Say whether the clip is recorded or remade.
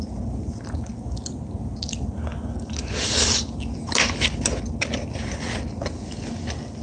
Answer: recorded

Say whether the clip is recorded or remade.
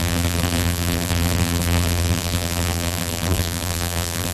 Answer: remade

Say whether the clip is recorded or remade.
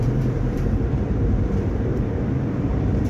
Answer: remade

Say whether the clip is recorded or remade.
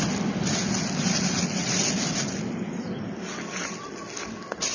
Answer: recorded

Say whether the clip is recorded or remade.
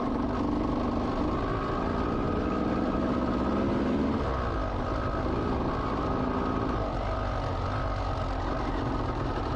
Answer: recorded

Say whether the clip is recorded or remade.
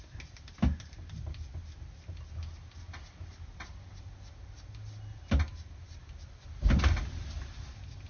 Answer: recorded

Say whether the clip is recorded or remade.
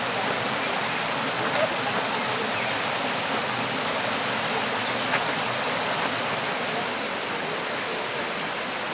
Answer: recorded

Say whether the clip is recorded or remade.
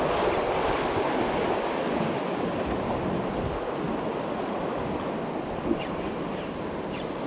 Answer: recorded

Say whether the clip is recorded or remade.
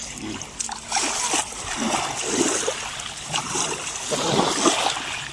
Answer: recorded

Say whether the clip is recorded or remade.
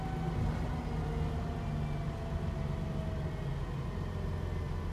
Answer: recorded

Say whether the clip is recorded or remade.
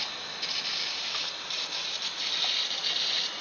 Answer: remade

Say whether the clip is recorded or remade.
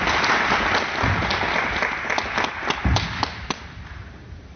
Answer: recorded